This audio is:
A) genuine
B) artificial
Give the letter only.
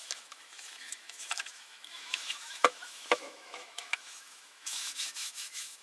B